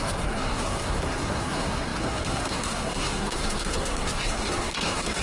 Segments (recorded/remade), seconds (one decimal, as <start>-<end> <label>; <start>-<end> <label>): 0.0-5.2 remade